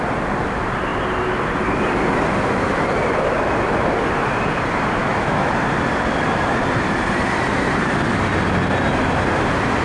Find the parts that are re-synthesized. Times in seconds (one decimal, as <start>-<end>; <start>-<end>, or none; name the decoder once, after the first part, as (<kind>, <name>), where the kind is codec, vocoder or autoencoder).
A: 5.0-5.5 (autoencoder, DAC-VAE)

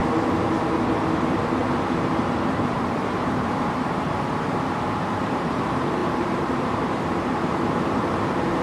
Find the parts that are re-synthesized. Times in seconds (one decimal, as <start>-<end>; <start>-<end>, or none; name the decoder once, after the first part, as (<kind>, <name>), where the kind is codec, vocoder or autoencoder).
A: 1.6-8.6 (vocoder, BigVGAN v2)

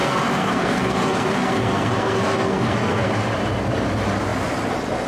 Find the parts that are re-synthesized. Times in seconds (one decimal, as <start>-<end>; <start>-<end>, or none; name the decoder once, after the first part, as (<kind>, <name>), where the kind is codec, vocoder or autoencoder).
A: 0.0-3.1 (codec, SNAC)